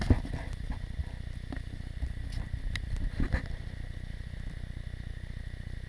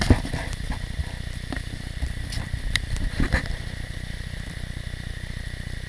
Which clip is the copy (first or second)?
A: second